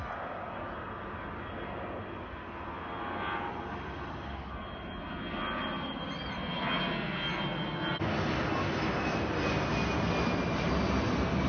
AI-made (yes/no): no